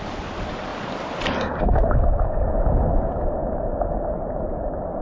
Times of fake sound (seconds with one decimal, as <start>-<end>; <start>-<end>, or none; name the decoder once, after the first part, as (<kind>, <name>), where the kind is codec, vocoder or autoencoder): none